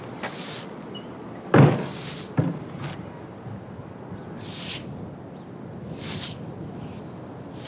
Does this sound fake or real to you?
real